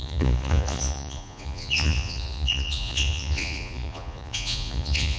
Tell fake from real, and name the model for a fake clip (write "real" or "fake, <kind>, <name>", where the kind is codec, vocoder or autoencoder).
fake, vocoder, Vocos